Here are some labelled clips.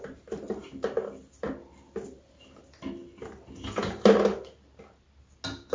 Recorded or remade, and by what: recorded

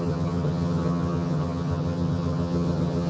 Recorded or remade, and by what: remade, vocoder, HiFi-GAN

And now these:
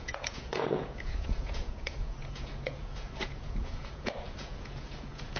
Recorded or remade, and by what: remade, vocoder, Vocos